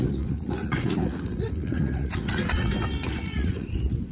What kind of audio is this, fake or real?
fake